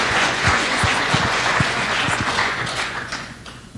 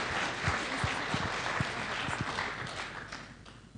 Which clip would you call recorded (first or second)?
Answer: second